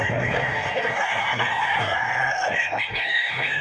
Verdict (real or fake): fake